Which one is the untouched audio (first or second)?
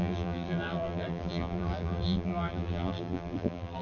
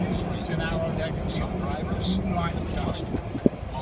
second